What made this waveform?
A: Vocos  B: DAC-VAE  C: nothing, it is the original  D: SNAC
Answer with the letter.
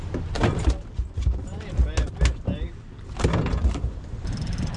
C